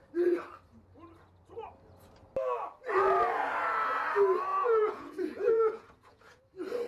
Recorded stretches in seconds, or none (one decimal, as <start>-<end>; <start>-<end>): 0.0-4.5; 6.4-6.9